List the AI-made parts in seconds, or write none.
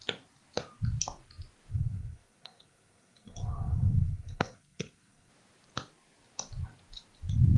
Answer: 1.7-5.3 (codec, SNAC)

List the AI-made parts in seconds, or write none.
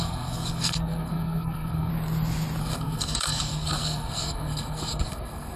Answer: 0.0-1.9 (codec, SNAC); 2.6-5.6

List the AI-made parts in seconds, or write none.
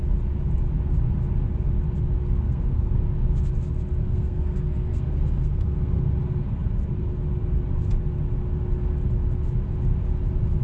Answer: 2.2-2.9 (codec, SNAC); 4.0-6.0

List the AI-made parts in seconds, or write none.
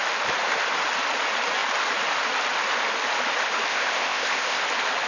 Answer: 3.7-4.6 (codec, ZipCodec)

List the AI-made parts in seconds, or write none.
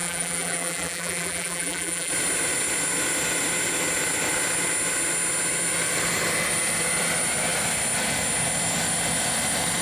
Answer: 0.0-2.1 (vocoder, BigVGAN v2)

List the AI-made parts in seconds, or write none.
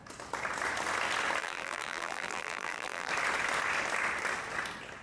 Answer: 1.4-3.1 (vocoder, BigVGAN v2)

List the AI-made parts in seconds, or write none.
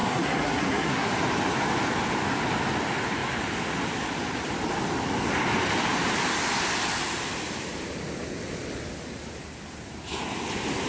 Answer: 0.0-1.1 (codec, SNAC)